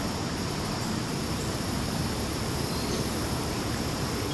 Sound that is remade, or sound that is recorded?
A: remade